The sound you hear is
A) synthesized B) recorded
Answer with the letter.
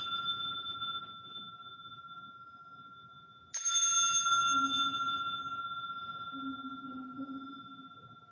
B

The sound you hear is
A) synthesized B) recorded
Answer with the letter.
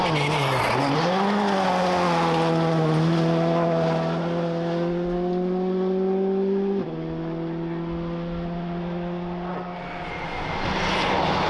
B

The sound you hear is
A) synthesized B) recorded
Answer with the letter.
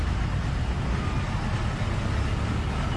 B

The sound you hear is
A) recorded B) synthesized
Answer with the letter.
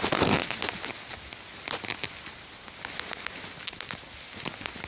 A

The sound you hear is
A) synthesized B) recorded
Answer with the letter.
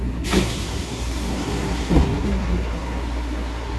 A